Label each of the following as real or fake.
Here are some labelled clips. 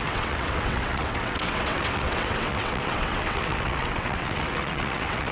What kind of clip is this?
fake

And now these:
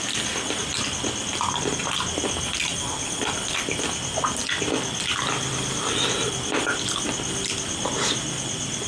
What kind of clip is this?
real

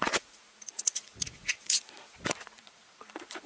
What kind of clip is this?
fake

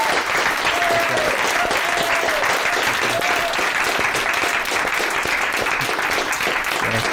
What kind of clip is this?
real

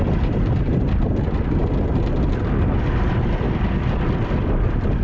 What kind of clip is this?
real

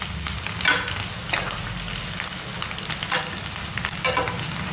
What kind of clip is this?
real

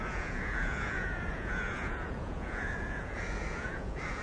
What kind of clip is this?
fake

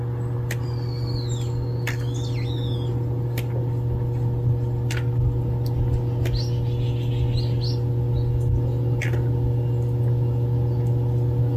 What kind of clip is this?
real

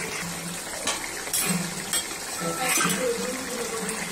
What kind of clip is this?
real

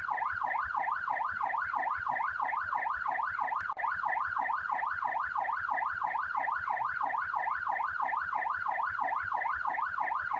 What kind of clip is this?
real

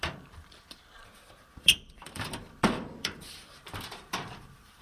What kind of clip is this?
fake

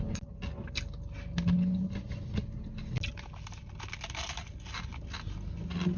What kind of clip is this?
real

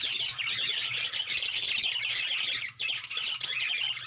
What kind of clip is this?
real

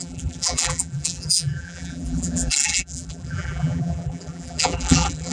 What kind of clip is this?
fake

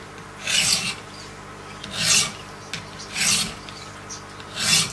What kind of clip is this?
real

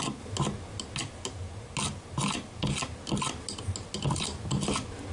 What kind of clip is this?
real